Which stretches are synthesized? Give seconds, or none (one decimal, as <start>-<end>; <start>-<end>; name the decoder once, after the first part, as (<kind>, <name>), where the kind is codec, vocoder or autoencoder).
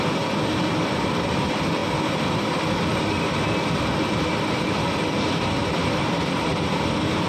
5.6-6.1 (vocoder, BigVGAN v2)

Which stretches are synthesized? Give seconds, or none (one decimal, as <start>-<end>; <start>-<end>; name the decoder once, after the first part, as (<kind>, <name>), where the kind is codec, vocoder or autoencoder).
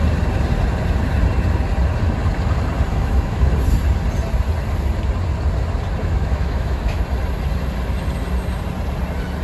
2.9-3.5 (autoencoder, DAC-VAE); 6.0-7.0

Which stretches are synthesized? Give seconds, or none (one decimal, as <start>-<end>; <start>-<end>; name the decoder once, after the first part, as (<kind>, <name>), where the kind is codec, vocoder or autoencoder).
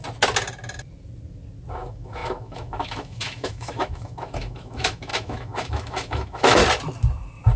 1.7-6.6 (autoencoder, DAC-VAE)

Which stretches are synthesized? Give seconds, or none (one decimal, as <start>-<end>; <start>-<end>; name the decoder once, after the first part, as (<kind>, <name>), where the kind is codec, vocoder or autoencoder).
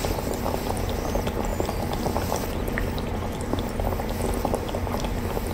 none